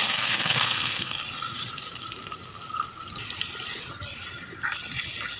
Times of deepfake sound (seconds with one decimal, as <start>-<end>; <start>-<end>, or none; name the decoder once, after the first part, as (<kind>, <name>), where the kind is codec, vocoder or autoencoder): 0.0-1.2 (codec, SNAC)